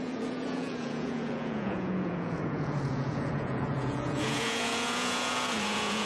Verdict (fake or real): fake